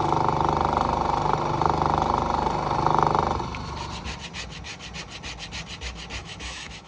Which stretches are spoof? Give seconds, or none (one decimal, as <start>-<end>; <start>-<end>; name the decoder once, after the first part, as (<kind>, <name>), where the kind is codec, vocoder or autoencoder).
6.2-6.9 (autoencoder, DAC-VAE)

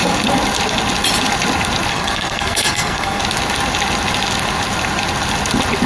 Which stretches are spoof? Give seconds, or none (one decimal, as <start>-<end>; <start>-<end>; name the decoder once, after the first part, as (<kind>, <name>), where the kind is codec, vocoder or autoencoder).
1.9-3.2 (codec, SNAC)

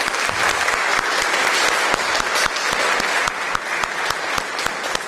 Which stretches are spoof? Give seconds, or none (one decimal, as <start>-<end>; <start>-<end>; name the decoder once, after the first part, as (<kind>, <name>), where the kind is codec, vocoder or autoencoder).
none

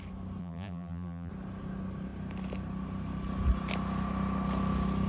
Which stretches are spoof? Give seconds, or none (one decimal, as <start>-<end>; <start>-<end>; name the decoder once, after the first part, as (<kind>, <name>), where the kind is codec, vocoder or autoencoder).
0.4-1.3 (vocoder, BigVGAN v2)

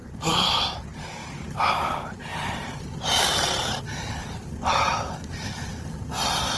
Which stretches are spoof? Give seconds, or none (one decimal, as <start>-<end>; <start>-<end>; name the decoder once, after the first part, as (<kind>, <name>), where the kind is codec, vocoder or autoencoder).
0.0-0.6 (vocoder, BigVGAN v2); 1.2-1.7; 2.3-3.8

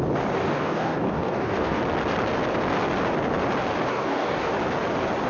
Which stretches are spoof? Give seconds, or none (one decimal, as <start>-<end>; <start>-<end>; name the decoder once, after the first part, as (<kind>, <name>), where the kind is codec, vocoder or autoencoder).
0.4-1.8 (codec, DAC); 3.9-4.5